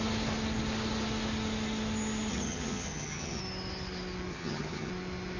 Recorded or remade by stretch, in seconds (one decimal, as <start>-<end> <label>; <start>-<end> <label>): 0.0-2.3 recorded; 2.3-3.4 remade; 3.4-4.3 recorded; 4.3-4.9 remade; 4.9-5.4 recorded